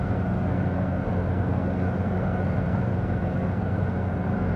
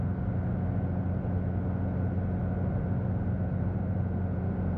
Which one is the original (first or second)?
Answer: second